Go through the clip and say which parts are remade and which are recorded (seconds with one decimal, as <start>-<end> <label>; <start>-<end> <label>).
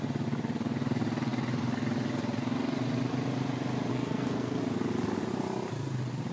0.0-3.9 recorded; 3.9-4.6 remade; 4.6-6.3 recorded